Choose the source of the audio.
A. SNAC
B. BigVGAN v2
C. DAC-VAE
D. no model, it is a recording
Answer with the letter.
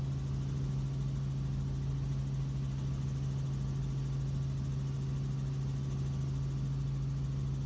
D